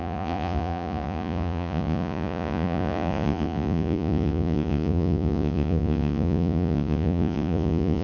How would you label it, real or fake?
fake